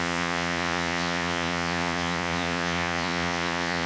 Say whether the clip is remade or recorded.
remade